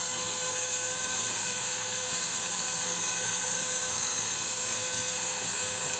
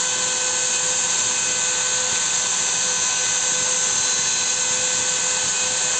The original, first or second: second